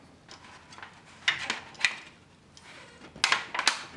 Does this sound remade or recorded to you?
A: recorded